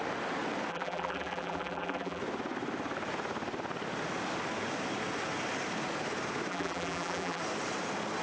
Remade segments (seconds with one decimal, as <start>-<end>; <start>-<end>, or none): 0.7-2.2; 6.5-7.4